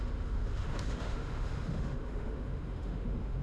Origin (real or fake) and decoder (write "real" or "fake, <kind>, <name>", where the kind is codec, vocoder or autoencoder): fake, autoencoder, DAC-VAE